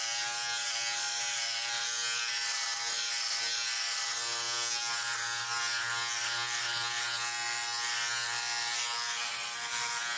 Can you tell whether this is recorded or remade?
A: recorded